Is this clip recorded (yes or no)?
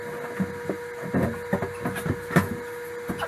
yes